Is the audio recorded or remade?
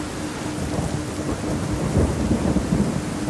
recorded